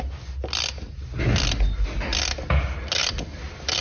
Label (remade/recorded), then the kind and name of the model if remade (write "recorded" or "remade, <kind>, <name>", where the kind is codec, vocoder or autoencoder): recorded